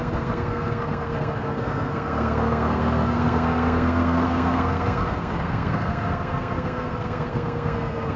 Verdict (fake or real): fake